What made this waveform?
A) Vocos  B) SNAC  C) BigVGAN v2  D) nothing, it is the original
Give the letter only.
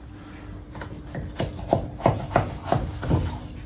D